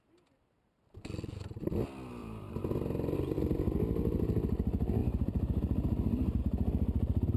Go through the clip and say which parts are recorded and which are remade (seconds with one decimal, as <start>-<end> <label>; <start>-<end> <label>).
0.0-2.2 recorded; 2.2-3.6 remade; 3.6-5.0 recorded; 5.0-6.4 remade; 6.4-7.4 recorded